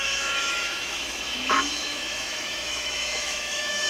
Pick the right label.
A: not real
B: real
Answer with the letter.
A